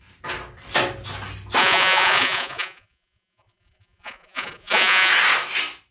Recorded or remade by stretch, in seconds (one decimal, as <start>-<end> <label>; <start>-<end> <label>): 0.0-1.6 recorded; 1.6-5.1 remade; 5.1-5.9 recorded